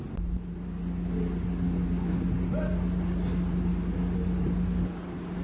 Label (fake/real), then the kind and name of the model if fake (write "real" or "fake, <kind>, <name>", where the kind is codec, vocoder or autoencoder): real